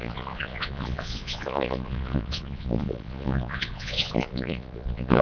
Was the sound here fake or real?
fake